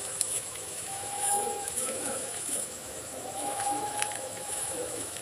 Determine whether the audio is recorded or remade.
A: remade